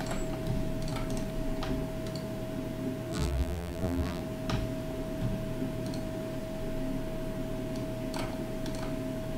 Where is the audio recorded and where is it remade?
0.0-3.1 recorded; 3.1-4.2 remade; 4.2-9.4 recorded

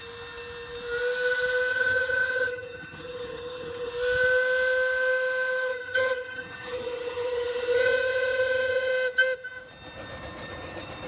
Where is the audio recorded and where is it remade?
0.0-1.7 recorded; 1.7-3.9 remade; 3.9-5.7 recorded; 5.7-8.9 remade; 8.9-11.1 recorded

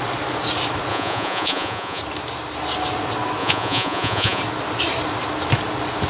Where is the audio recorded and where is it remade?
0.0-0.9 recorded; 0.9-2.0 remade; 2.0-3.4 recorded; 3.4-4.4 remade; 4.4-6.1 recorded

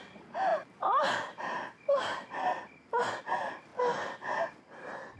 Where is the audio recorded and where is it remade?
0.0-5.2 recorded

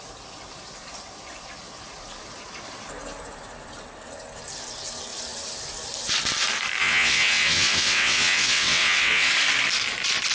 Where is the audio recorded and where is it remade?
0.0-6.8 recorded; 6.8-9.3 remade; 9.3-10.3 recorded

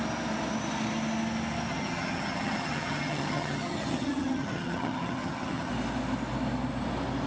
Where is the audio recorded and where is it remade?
0.0-1.7 recorded; 1.7-5.7 remade; 5.7-7.3 recorded